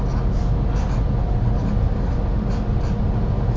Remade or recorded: recorded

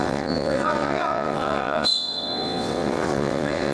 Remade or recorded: remade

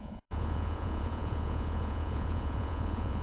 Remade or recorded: remade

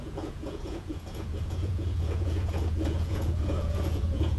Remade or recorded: remade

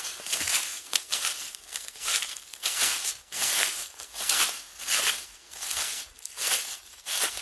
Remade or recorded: remade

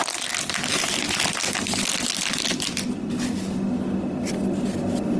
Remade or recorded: recorded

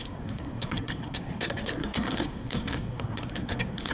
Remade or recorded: remade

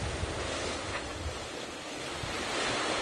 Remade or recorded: recorded